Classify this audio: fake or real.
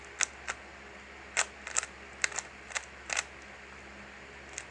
real